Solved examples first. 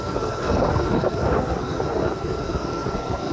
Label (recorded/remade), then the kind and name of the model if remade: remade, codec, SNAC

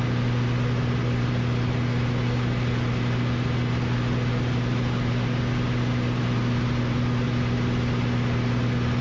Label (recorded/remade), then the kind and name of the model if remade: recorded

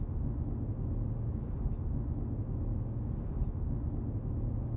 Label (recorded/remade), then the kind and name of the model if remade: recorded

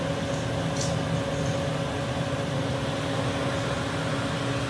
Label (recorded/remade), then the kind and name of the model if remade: recorded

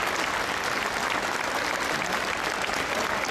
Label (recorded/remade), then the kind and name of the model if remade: recorded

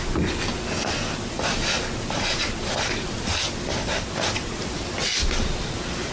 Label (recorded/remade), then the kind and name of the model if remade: recorded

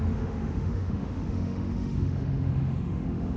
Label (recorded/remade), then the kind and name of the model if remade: remade, autoencoder, DAC-VAE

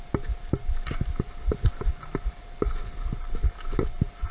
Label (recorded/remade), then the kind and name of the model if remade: remade, vocoder, BigVGAN v2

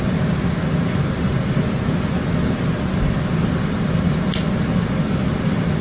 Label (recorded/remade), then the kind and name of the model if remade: remade, vocoder, BigVGAN v2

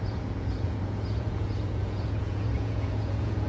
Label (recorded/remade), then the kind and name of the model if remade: remade, vocoder, Vocos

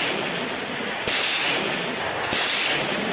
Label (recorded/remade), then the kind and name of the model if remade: recorded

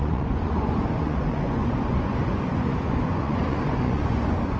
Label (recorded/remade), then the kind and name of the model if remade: remade, vocoder, Vocos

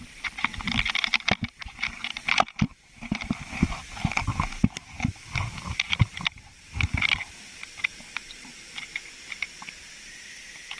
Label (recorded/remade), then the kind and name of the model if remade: remade, vocoder, BigVGAN v2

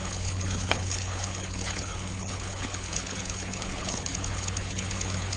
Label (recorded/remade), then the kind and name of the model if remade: remade, codec, HILCodec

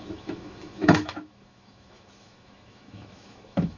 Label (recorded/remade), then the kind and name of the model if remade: remade, autoencoder, DAC-VAE